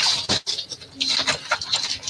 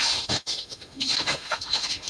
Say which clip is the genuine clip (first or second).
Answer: first